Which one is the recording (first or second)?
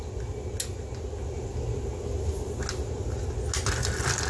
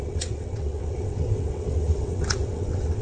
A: first